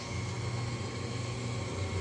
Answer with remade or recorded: recorded